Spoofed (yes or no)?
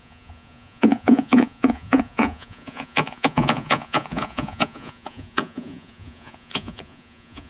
yes